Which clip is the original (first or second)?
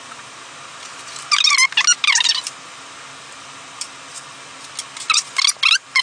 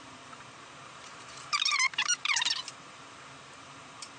first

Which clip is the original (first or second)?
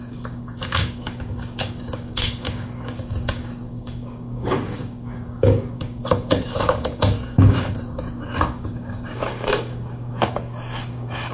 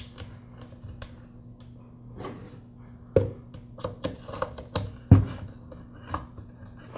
second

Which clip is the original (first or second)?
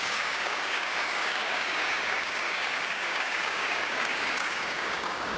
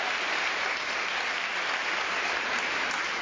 second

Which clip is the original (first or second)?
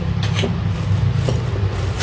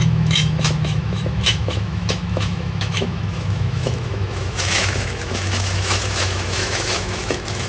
first